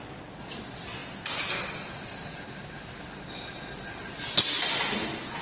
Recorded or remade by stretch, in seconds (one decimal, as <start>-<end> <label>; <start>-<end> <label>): 0.0-5.4 recorded